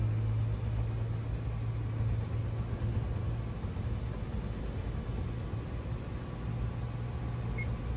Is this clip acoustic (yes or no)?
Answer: yes